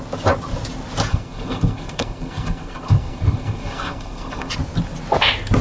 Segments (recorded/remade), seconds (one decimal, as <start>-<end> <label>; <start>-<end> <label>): 0.0-1.1 recorded; 1.1-4.5 remade; 4.5-5.6 recorded